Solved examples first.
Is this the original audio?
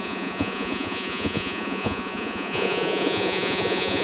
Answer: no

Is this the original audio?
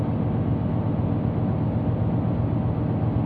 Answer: yes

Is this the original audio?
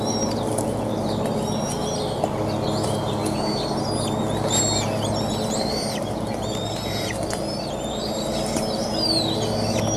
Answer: yes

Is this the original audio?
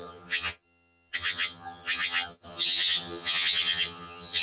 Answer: no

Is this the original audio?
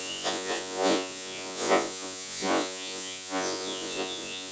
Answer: no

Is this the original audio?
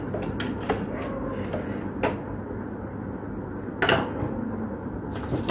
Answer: yes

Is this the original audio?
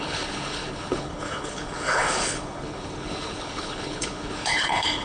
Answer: no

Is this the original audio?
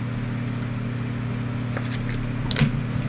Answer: yes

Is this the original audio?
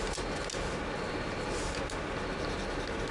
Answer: yes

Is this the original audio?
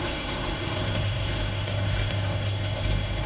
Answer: no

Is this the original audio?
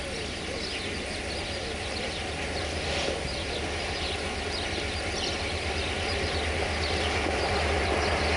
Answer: yes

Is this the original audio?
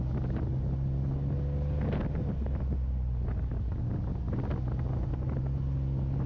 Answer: yes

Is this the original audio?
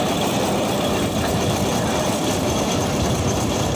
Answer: no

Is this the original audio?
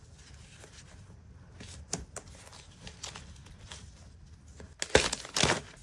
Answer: yes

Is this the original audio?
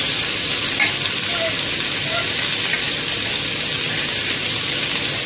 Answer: yes